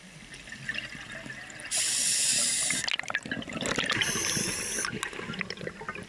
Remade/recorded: recorded